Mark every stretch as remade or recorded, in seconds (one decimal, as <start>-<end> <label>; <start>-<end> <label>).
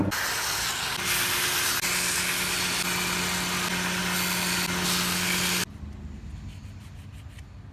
0.0-7.7 recorded